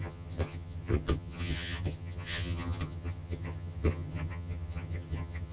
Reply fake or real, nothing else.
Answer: fake